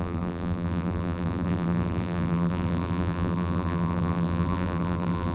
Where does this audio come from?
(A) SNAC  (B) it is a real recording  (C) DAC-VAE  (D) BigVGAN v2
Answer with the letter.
D